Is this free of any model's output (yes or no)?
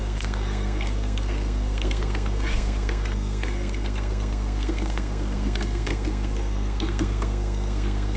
no